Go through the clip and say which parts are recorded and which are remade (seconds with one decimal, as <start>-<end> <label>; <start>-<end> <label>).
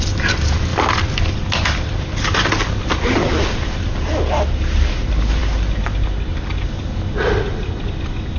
0.0-7.5 recorded; 7.5-8.4 remade